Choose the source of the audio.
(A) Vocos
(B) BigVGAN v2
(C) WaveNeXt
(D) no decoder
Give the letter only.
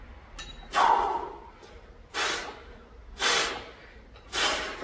D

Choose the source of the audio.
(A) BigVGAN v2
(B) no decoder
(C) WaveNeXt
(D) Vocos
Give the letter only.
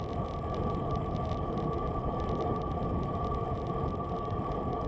B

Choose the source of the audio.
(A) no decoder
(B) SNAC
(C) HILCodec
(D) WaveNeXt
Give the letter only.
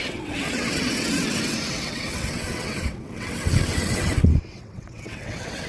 D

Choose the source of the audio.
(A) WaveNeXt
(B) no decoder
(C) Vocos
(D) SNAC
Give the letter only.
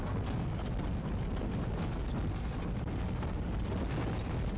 B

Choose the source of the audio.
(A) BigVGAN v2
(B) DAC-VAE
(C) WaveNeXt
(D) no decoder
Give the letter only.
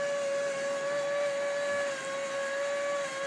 D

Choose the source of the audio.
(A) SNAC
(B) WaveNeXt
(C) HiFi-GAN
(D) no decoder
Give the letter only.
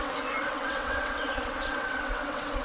B